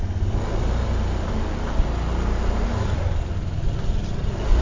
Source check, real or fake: fake